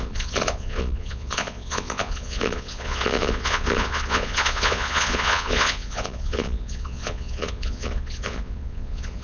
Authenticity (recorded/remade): remade